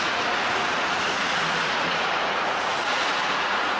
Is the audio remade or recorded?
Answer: remade